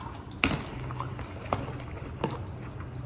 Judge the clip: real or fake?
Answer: real